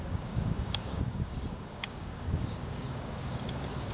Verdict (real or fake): fake